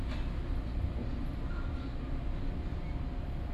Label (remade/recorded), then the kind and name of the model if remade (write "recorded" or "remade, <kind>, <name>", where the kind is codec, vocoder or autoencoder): recorded